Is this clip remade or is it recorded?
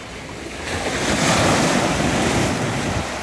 recorded